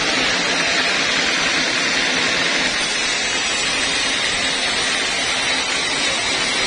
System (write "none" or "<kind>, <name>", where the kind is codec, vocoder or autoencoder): none